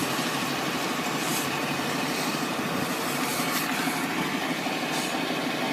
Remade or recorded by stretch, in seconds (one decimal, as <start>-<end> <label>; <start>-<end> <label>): 0.0-5.7 recorded